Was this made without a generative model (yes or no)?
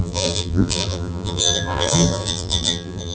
no